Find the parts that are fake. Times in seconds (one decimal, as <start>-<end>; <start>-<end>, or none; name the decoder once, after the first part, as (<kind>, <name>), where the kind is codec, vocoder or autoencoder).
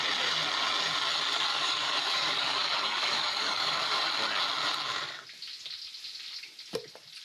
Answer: 1.5-4.1 (codec, DAC)